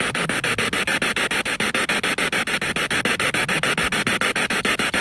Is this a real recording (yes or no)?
yes